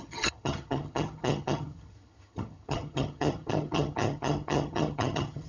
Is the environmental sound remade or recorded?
remade